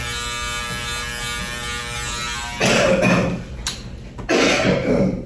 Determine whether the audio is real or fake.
real